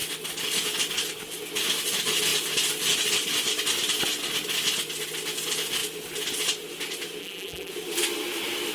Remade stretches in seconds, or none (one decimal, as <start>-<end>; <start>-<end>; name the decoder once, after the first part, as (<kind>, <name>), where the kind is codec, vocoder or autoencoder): 7.2-7.7 (vocoder, BigVGAN v2)